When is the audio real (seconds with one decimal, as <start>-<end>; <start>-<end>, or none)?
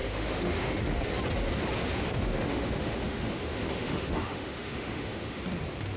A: 0.8-1.8; 5.4-6.0